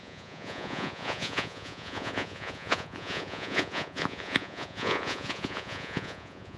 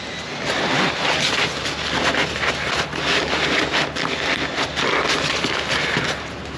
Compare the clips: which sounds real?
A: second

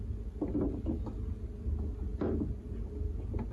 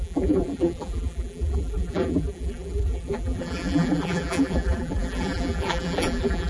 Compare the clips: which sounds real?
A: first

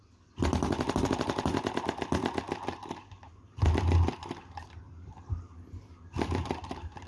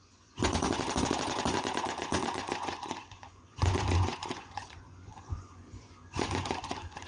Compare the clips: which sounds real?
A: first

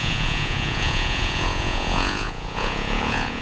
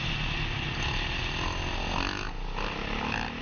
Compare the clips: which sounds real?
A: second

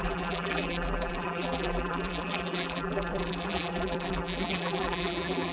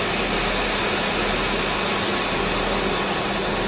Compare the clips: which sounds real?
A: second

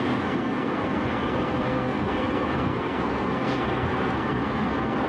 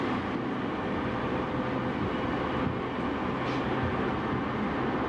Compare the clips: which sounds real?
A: second